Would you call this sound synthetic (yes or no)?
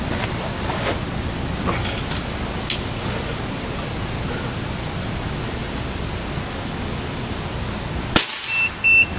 no